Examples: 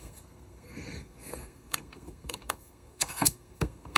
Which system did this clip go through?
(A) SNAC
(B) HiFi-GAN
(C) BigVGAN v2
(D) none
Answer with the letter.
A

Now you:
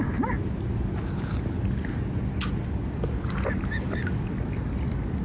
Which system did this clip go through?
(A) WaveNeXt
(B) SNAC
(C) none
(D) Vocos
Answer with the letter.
C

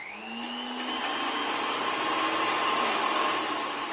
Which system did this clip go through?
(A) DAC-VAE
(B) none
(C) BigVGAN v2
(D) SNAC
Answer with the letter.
B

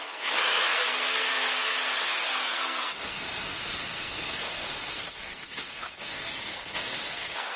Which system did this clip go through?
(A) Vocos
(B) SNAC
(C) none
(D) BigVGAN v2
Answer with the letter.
B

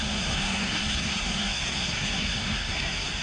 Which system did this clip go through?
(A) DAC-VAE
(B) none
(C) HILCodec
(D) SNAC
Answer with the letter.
D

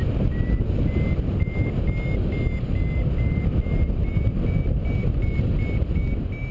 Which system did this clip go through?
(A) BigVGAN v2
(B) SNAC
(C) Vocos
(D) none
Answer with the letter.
D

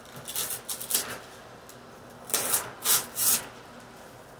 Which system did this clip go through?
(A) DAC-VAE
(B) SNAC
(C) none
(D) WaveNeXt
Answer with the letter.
C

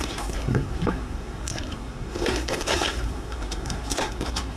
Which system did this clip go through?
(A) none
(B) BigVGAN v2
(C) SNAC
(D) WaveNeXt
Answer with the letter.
C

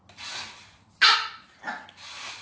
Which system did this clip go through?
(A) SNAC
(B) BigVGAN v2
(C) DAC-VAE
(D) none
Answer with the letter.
D